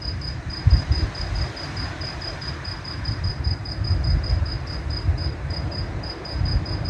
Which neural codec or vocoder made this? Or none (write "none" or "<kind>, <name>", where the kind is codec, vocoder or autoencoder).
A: vocoder, BigVGAN v2